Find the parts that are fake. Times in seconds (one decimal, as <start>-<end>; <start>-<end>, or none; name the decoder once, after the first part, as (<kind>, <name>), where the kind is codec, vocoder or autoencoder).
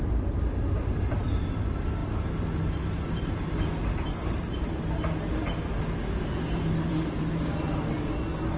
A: none